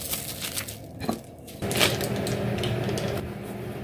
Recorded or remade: recorded